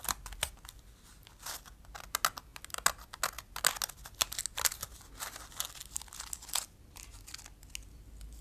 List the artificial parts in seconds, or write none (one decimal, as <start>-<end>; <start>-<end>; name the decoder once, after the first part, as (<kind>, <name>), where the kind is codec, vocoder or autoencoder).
none